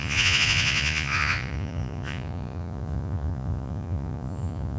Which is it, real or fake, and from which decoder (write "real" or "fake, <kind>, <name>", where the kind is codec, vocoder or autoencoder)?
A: fake, vocoder, Vocos